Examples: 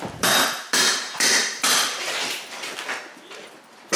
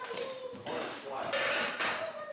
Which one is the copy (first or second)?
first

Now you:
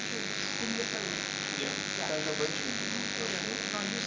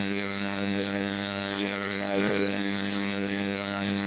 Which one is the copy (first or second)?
second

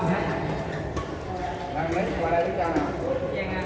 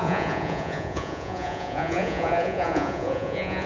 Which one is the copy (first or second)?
second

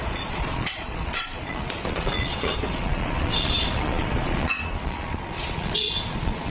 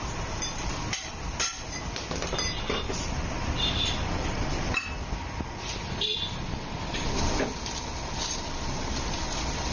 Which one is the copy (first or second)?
first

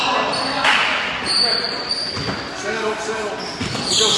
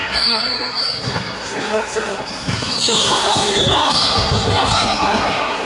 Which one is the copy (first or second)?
second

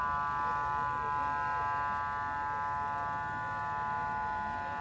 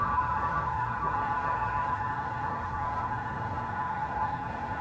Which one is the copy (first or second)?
second